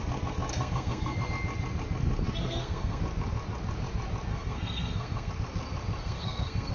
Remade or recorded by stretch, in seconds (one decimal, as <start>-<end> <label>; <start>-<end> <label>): 0.0-0.5 recorded; 0.5-1.3 remade; 1.3-2.4 recorded; 2.4-3.0 remade; 3.0-4.3 recorded; 4.3-5.3 remade; 5.3-6.0 recorded; 6.0-6.7 remade